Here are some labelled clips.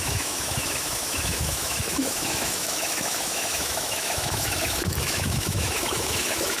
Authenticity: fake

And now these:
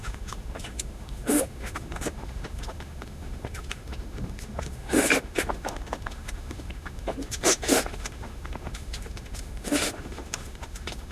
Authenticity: fake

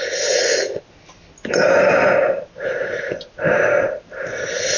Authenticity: real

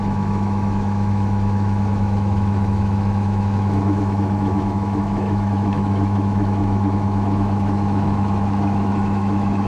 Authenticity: fake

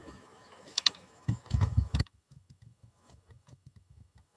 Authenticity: fake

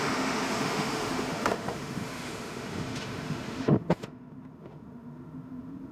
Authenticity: fake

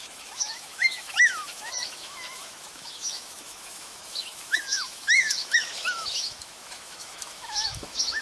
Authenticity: fake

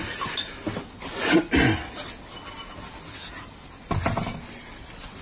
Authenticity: real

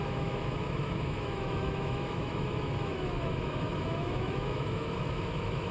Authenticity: fake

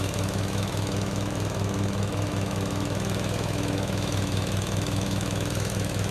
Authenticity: fake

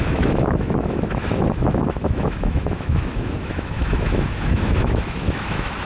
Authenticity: fake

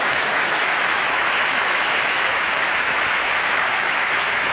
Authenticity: fake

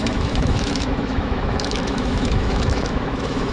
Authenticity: fake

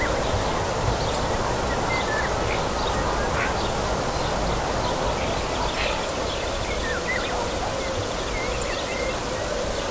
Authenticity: real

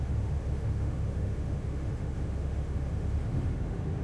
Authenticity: fake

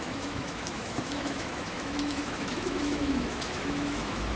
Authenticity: fake